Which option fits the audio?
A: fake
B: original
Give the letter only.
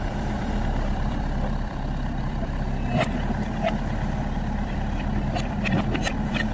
A